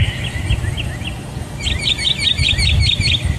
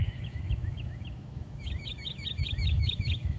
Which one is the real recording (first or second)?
first